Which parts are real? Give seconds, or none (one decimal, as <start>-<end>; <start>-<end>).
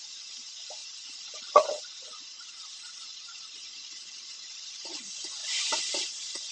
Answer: 0.0-0.8; 4.7-5.4; 5.9-6.5